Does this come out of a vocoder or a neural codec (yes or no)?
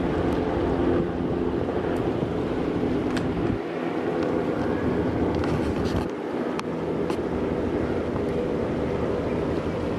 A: no